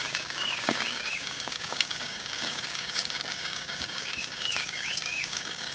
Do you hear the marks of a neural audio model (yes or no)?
yes